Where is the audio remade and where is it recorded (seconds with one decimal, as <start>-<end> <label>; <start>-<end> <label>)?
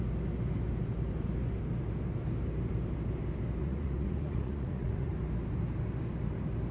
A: 0.0-3.6 recorded; 3.6-5.1 remade; 5.1-6.7 recorded